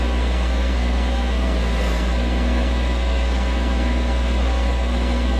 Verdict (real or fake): fake